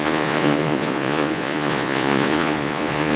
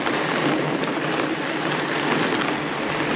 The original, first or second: second